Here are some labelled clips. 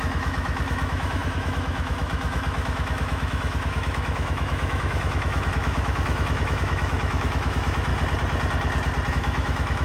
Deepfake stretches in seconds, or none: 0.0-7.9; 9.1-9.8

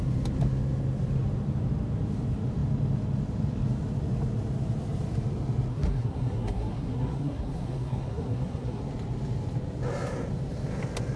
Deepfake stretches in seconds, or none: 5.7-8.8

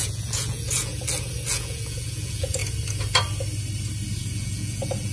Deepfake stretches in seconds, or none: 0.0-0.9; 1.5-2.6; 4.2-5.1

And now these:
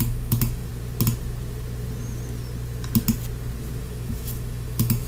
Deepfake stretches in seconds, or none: 0.0-0.7; 3.8-5.1